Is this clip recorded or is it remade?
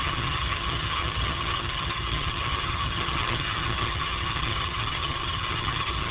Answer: remade